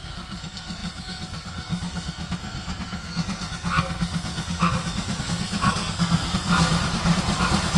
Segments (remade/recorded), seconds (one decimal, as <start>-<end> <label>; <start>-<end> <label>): 0.0-6.7 remade; 6.7-7.8 recorded